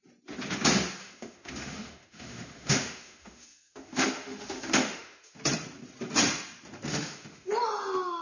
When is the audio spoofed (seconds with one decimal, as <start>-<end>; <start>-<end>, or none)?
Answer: 1.0-5.4; 6.9-7.5